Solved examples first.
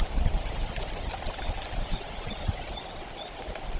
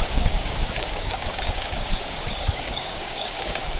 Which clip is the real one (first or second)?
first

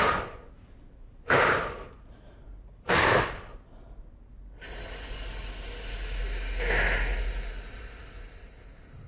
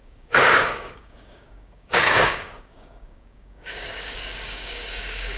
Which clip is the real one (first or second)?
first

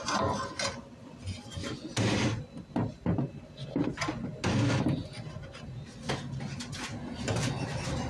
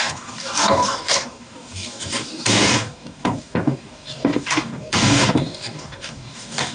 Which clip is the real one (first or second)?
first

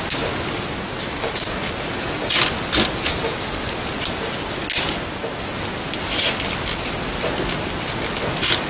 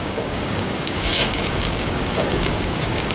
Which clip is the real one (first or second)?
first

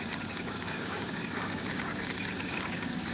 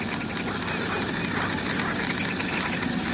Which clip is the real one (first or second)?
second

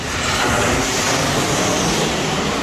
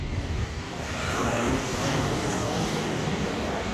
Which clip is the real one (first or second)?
first